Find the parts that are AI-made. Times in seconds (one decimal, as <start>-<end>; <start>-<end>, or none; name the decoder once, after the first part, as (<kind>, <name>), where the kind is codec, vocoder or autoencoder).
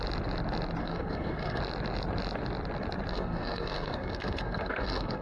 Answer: 0.8-1.6 (codec, SNAC); 3.1-5.2